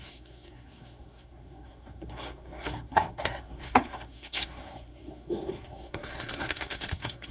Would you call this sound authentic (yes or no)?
no